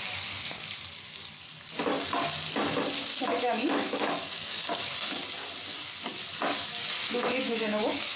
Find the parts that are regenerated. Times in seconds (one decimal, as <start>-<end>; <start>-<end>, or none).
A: 3.1-4.6; 7.0-8.2